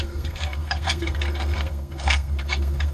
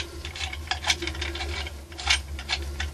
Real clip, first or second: second